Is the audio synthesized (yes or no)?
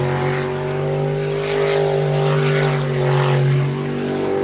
no